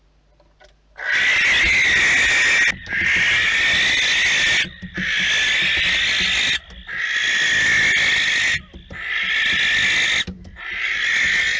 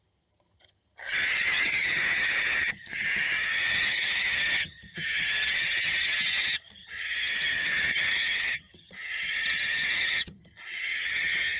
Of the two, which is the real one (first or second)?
first